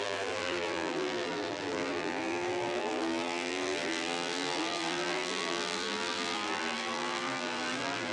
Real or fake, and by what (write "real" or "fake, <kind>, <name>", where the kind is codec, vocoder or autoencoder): fake, vocoder, BigVGAN v2